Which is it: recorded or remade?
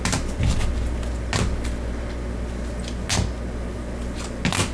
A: recorded